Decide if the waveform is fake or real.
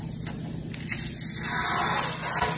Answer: real